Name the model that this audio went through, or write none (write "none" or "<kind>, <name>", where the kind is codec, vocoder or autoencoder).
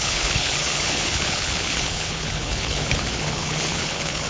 codec, HILCodec